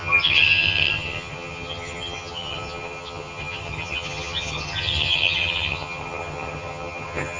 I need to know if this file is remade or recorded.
remade